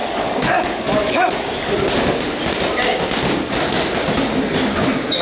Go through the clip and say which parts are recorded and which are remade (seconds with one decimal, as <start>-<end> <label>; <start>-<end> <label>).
0.0-1.7 remade; 1.7-5.2 recorded

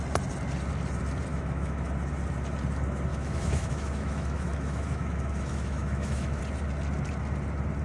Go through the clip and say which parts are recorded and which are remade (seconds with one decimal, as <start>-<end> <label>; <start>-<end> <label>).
0.0-1.3 recorded; 1.3-1.9 remade; 1.9-3.1 recorded; 3.1-6.4 remade; 6.4-7.8 recorded

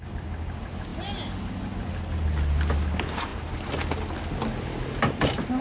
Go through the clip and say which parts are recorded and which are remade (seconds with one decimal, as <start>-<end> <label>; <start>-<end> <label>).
0.0-5.6 recorded

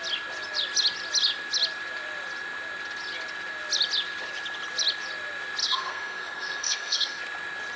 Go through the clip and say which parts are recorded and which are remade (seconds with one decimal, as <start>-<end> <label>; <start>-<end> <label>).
0.0-5.6 recorded; 5.6-7.2 remade; 7.2-7.8 recorded

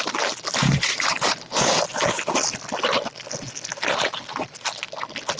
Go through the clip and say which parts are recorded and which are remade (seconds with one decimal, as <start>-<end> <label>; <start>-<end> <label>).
0.0-0.6 recorded; 0.6-1.7 remade; 1.7-5.4 recorded

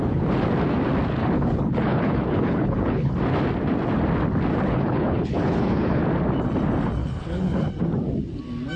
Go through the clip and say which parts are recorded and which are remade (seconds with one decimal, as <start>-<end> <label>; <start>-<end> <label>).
0.0-1.2 recorded; 1.2-3.1 remade; 3.1-4.5 recorded; 4.5-6.0 remade; 6.0-7.0 recorded; 7.0-7.7 remade; 7.7-8.8 recorded

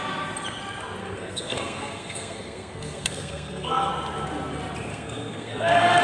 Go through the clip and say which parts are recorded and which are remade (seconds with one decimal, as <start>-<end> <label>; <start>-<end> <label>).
0.0-1.0 recorded; 1.0-3.9 remade; 3.9-4.9 recorded; 4.9-6.0 remade

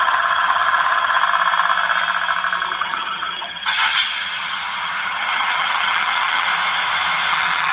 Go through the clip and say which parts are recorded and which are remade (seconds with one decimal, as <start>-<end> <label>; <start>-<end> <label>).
0.0-1.2 remade; 1.2-2.8 recorded; 2.8-6.5 remade; 6.5-7.3 recorded; 7.3-7.7 remade